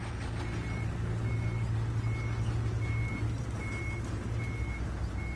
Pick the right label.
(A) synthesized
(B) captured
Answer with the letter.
B